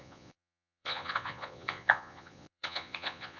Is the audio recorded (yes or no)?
no